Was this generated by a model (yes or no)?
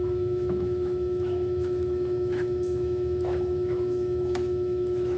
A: yes